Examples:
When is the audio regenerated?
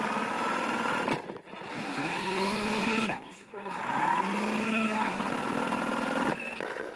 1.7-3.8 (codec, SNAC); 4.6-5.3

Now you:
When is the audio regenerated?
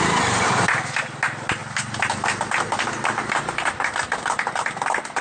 none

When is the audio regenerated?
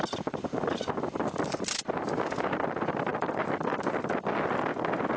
none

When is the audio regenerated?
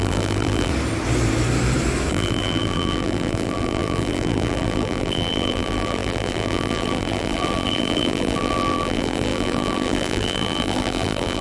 0.0-0.7 (vocoder, BigVGAN v2); 2.1-11.4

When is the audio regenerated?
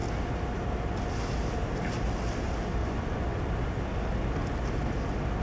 2.8-3.5 (vocoder, Vocos)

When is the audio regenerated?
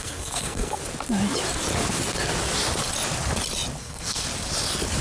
0.0-0.8 (codec, SNAC); 3.8-4.3